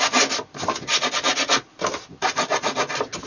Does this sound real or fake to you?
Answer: real